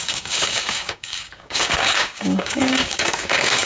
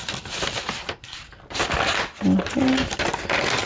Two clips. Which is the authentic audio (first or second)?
second